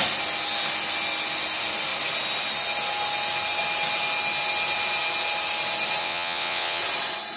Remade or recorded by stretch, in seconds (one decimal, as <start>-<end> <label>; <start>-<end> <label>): 0.0-6.0 recorded; 6.0-6.8 remade; 6.8-7.4 recorded